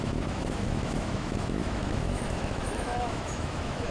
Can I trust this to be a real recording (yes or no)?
no